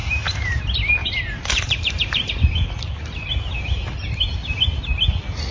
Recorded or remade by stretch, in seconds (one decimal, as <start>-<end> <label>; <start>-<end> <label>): 0.0-0.6 remade; 0.6-1.0 recorded; 1.0-2.3 remade; 2.3-5.5 recorded